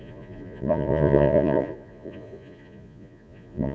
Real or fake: fake